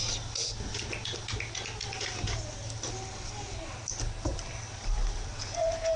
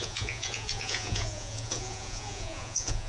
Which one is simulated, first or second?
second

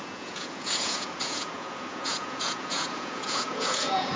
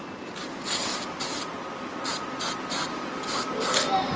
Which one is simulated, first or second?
first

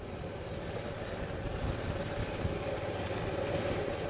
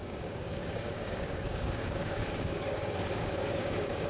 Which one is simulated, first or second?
second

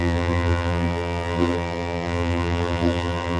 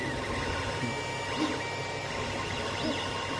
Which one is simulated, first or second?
first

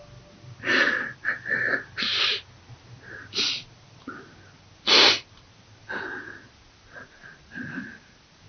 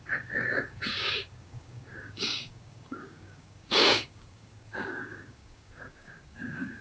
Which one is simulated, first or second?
second